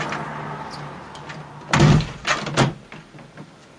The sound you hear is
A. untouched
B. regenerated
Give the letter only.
A